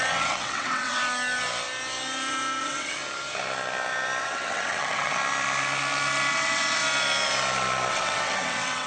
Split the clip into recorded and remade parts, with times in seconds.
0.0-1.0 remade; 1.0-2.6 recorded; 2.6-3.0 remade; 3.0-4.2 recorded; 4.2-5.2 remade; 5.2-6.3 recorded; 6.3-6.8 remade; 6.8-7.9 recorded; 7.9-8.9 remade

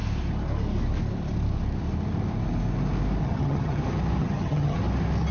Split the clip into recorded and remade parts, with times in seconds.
0.0-3.2 recorded; 3.2-3.8 remade; 3.8-4.2 recorded; 4.2-4.8 remade; 4.8-5.3 recorded

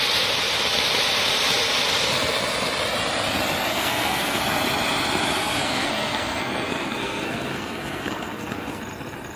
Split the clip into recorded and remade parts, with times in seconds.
0.0-3.7 recorded; 3.7-4.4 remade; 4.4-5.4 recorded; 5.4-8.8 remade; 8.8-9.4 recorded

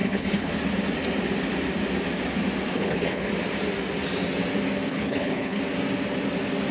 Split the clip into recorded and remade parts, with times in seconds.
0.0-0.5 remade; 0.5-2.7 recorded; 2.7-3.3 remade; 3.3-4.9 recorded; 4.9-5.6 remade; 5.6-6.7 recorded

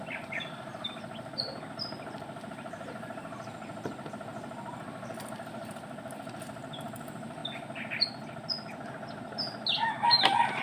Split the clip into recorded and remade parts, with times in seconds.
0.0-7.4 remade; 7.4-9.9 recorded; 9.9-10.6 remade

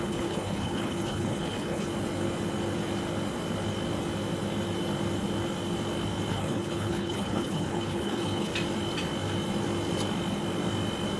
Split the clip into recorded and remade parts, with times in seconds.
0.0-1.9 remade; 1.9-6.3 recorded; 6.3-8.5 remade; 8.5-11.2 recorded

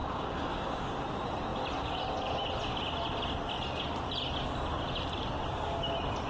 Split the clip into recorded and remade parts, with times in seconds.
0.0-0.9 remade; 0.9-6.3 recorded

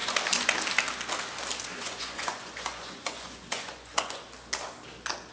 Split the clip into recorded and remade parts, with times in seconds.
0.0-1.7 recorded; 1.7-4.2 remade; 4.2-5.3 recorded